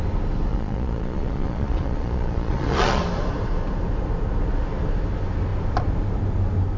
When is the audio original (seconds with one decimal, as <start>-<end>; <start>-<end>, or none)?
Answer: 0.0-0.5; 3.0-6.8